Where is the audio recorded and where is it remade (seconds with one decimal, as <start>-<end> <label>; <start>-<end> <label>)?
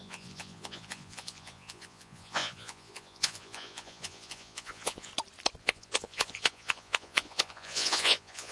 0.0-5.1 remade; 5.1-5.6 recorded; 5.6-8.5 remade